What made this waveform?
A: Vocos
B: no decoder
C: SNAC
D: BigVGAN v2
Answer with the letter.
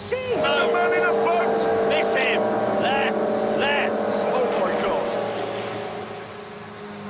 B